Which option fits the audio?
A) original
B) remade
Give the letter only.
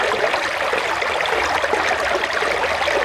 A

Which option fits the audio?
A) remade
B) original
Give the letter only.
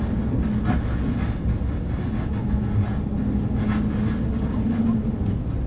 B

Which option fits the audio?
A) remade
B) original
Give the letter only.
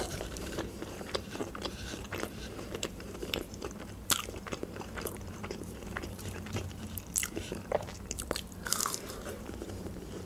A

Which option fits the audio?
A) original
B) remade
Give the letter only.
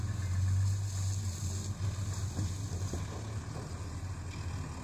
A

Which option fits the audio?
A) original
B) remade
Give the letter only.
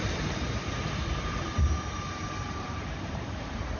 B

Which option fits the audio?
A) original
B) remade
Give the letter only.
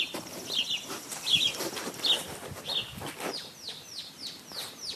A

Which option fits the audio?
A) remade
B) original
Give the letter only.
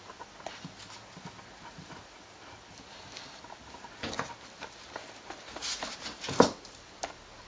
B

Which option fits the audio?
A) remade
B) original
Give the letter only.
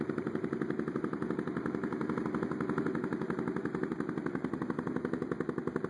A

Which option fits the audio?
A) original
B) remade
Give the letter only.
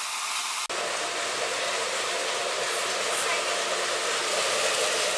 A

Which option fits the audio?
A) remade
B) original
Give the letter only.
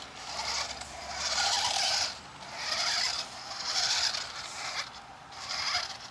A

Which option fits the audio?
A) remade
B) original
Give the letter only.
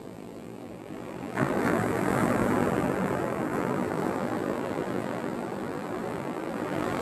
A